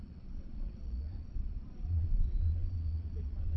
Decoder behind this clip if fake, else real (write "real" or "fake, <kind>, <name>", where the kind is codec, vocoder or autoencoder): fake, vocoder, Vocos